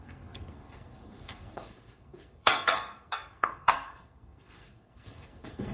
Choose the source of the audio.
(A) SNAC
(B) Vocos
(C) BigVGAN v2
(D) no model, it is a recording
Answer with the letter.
A